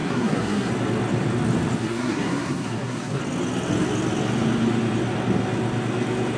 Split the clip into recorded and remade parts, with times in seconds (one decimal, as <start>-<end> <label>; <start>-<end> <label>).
0.0-0.7 remade; 0.7-1.8 recorded; 1.8-3.2 remade; 3.2-6.4 recorded